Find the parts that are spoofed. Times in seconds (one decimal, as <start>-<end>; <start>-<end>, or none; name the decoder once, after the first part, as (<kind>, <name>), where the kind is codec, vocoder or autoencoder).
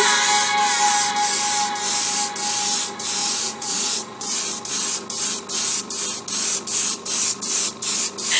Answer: 3.2-4.3 (vocoder, Vocos)